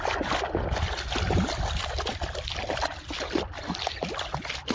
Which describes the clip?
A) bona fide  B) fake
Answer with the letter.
A